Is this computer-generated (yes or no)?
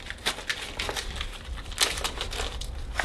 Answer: no